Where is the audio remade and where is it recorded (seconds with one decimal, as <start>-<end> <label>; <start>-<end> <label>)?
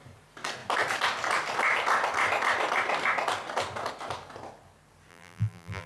0.0-5.1 recorded; 5.1-5.9 remade